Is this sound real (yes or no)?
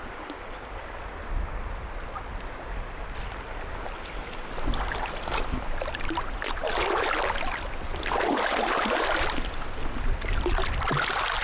yes